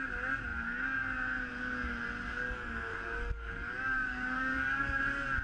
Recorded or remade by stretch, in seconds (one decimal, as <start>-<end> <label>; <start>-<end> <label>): 0.0-2.9 recorded; 2.9-5.0 remade; 5.0-5.4 recorded